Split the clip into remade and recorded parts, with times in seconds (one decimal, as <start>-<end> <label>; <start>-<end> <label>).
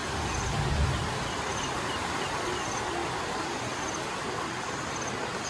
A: 0.0-1.5 recorded; 1.5-2.2 remade; 2.2-3.0 recorded; 3.0-4.6 remade; 4.6-5.5 recorded